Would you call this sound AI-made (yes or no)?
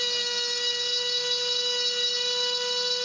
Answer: no